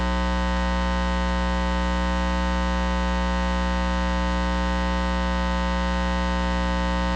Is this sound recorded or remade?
recorded